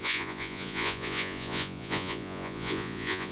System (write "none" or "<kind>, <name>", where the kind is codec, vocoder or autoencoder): vocoder, Vocos